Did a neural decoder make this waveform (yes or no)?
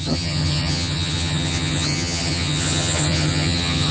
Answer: yes